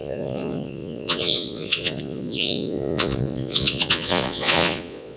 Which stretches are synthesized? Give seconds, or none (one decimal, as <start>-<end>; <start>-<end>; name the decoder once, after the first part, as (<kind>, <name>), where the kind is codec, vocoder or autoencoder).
0.0-5.2 (vocoder, Vocos)